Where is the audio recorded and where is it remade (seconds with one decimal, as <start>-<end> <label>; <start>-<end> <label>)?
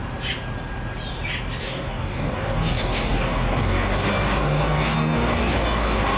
0.0-1.6 recorded; 1.6-6.2 remade